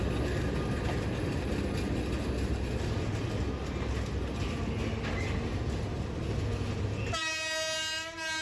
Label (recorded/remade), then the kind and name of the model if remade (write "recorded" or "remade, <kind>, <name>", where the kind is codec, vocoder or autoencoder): recorded